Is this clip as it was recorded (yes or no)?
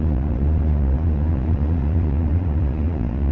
no